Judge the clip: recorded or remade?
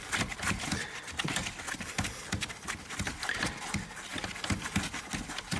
recorded